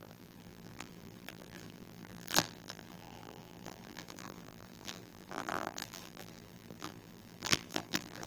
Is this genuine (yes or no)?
no